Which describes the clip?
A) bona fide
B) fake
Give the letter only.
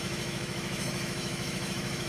B